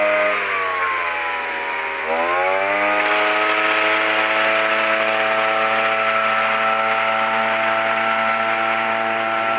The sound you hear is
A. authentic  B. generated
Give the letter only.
A